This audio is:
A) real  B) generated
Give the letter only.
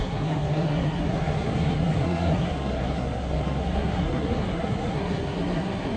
B